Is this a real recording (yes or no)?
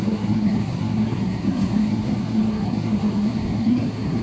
no